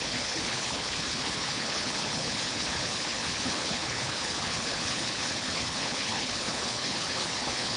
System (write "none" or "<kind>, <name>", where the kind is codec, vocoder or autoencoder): codec, HILCodec